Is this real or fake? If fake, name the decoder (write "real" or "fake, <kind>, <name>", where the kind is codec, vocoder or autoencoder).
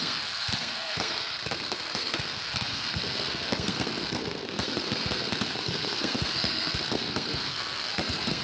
fake, codec, SNAC